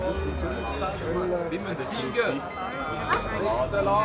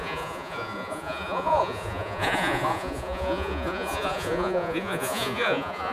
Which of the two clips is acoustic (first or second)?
first